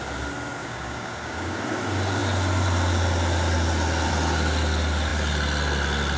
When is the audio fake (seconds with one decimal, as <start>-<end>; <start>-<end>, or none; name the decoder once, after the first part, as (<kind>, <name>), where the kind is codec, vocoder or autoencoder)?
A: 0.6-1.6 (codec, DAC)